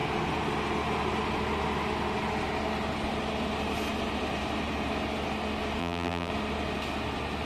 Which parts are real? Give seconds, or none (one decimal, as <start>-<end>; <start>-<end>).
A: 0.0-5.8; 6.3-7.5